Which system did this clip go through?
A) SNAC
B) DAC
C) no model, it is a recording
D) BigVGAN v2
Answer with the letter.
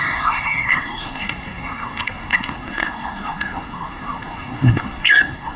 A